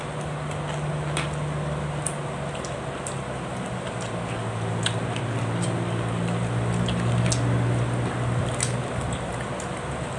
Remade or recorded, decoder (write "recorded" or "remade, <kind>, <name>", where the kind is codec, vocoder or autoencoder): recorded